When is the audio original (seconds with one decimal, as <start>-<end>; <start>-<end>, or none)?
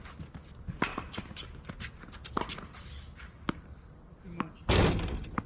0.0-5.5